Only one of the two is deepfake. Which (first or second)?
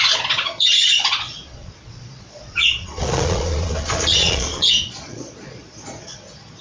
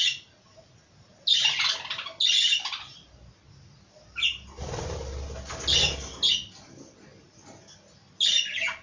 first